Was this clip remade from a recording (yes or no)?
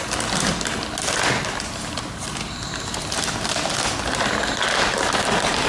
no